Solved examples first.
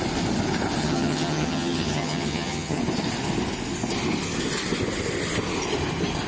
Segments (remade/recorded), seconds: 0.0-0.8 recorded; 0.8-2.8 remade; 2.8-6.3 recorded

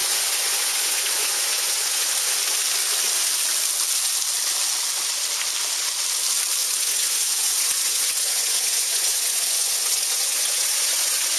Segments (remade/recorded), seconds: 0.0-2.1 remade; 2.1-6.6 recorded; 6.6-11.4 remade

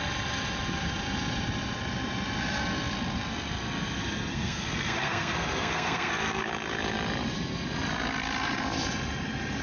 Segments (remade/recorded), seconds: 0.0-4.3 recorded; 4.3-6.5 remade; 6.5-9.6 recorded